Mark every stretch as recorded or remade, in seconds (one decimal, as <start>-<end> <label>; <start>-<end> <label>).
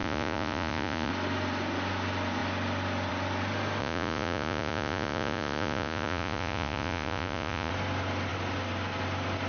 0.0-1.1 remade; 1.1-3.8 recorded; 3.8-7.7 remade; 7.7-9.5 recorded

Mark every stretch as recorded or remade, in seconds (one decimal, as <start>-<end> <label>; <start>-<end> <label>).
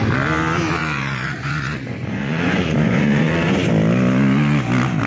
0.0-0.8 recorded; 0.8-3.7 remade; 3.7-5.1 recorded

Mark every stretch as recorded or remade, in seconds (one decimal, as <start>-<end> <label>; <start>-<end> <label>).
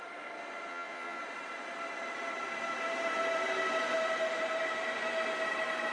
0.0-0.7 recorded; 0.7-1.2 remade; 1.2-5.9 recorded